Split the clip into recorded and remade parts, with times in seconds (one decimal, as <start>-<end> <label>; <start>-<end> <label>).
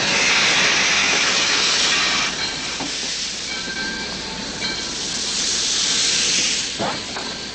0.0-1.0 recorded; 1.0-1.8 remade; 1.8-7.5 recorded